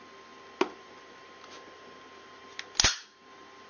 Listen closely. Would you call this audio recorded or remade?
recorded